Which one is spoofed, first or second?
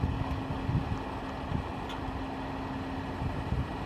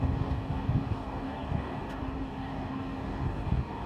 second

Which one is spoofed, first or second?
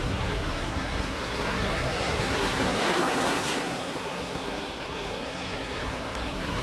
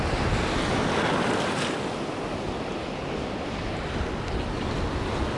first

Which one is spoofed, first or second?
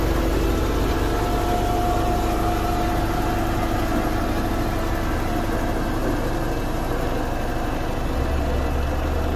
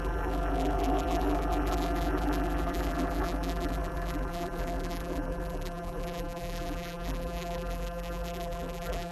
second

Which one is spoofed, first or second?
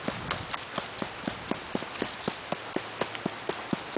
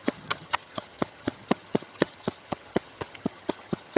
second